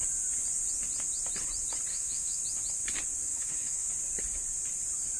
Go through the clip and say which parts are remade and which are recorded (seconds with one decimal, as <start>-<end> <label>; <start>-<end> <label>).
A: 0.0-1.9 recorded; 1.9-2.4 remade; 2.4-3.3 recorded; 3.3-3.9 remade; 3.9-5.2 recorded